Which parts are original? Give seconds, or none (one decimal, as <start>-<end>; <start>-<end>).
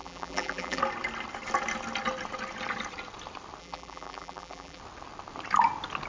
0.8-3.6; 4.8-6.1